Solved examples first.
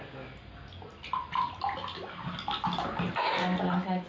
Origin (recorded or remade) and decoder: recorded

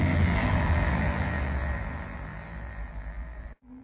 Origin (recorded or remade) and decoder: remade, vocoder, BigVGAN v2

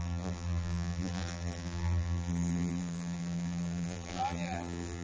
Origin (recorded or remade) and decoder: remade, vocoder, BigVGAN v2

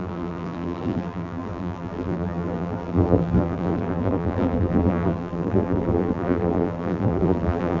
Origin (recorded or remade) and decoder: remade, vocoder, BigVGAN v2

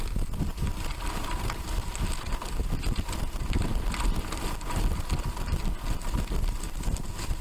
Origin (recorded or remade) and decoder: recorded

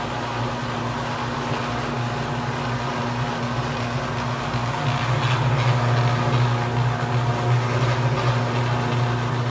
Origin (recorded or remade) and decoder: recorded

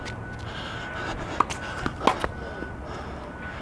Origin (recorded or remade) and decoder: recorded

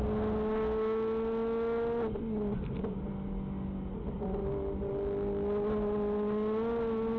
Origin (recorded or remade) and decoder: recorded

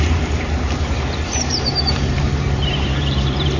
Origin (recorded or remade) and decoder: remade, vocoder, BigVGAN v2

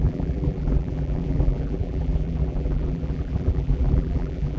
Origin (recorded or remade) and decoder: remade, vocoder, BigVGAN v2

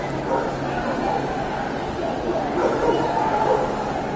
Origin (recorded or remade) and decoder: recorded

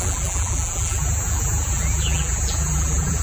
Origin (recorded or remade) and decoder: remade, vocoder, BigVGAN v2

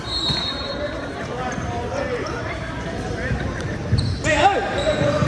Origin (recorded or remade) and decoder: remade, vocoder, BigVGAN v2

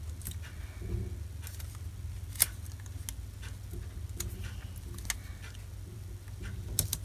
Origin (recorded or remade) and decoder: recorded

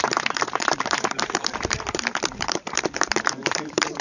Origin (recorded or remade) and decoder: remade, vocoder, BigVGAN v2